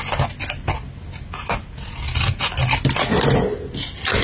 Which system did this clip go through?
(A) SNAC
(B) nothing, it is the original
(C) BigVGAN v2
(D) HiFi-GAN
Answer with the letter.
B